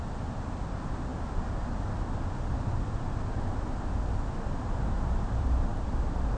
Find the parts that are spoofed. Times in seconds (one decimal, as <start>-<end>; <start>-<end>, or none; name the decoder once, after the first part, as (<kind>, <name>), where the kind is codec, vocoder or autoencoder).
0.0-1.1 (vocoder, BigVGAN v2); 4.9-5.7